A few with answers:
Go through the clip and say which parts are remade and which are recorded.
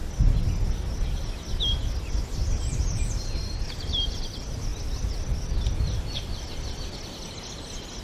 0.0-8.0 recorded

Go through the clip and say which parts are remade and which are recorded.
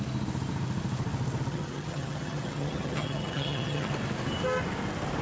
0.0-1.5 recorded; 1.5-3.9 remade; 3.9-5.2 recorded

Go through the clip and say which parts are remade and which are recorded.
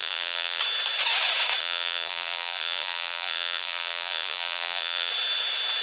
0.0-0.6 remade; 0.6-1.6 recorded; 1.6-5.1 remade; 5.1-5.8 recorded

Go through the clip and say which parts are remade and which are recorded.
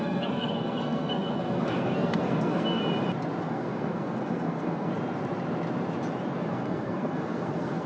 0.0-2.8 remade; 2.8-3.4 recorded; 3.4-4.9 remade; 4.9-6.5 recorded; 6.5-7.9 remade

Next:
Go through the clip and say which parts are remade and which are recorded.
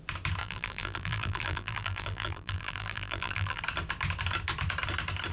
0.0-0.4 recorded; 0.4-3.6 remade; 3.6-5.3 recorded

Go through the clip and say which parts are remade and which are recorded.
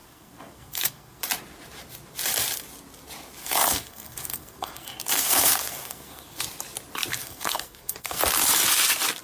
0.0-1.2 remade; 1.2-3.4 recorded; 3.4-6.4 remade; 6.4-7.1 recorded; 7.1-8.2 remade; 8.2-9.2 recorded